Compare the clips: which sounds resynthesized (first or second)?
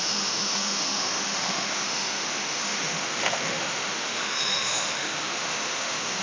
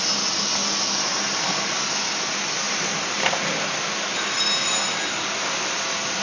first